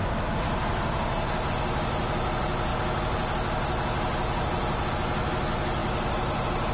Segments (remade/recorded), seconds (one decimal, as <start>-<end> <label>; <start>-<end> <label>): 0.0-6.7 recorded